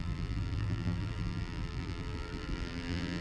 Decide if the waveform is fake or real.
fake